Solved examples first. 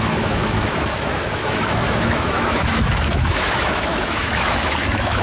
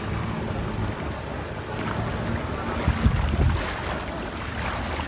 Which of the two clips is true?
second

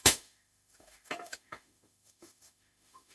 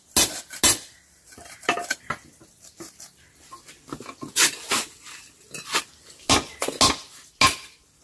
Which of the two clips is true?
second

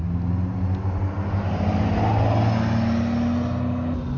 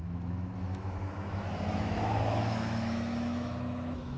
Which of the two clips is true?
first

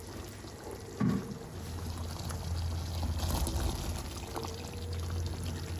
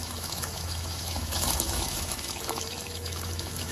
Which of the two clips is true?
first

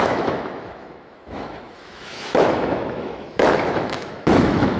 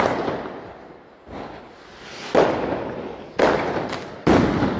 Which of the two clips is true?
second